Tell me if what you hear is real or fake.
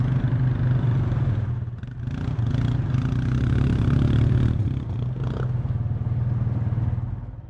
real